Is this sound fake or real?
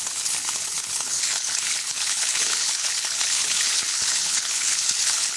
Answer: fake